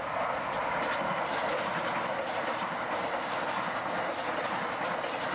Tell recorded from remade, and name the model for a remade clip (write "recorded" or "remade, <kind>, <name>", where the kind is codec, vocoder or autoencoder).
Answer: recorded